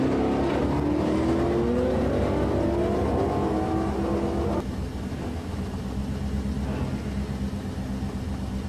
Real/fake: real